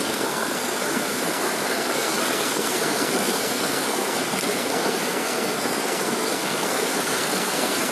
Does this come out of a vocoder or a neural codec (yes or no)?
yes